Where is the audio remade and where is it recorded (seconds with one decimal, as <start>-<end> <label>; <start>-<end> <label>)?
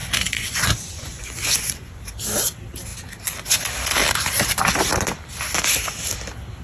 0.0-2.0 remade; 2.0-6.6 recorded